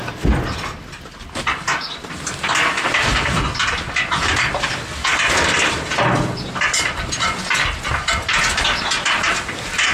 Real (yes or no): yes